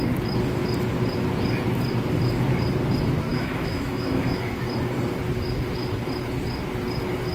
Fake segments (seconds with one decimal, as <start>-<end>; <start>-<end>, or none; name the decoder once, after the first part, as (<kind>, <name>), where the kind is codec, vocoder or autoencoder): 3.3-4.6 (autoencoder, DAC-VAE)